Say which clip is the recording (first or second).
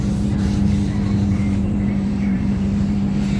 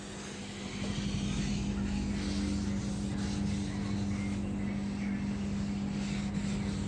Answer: second